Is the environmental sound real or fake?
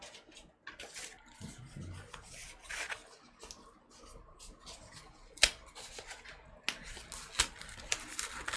real